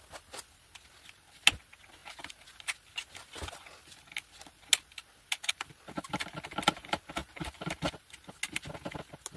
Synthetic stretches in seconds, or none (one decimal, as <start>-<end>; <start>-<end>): none